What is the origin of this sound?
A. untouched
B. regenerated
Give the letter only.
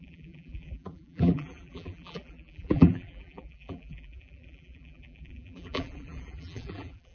B